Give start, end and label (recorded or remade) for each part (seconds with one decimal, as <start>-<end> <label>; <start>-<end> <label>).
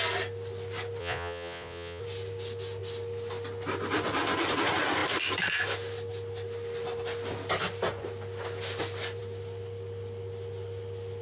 0.0-1.0 recorded; 1.0-2.0 remade; 2.0-11.2 recorded